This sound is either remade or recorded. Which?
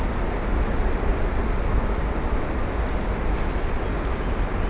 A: recorded